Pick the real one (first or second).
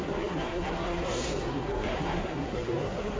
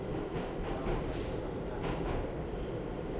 second